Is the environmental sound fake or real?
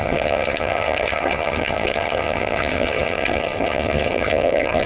fake